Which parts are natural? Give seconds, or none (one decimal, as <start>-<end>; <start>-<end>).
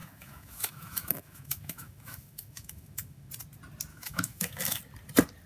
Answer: 3.3-3.9; 4.8-5.5